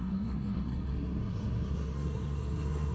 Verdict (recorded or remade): remade